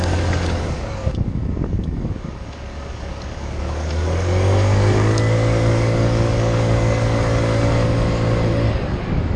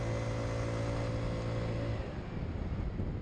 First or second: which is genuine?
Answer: second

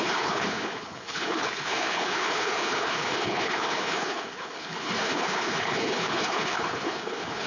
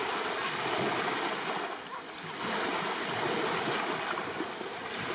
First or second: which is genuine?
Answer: second